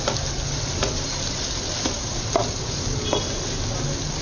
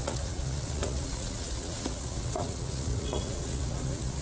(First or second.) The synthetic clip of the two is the second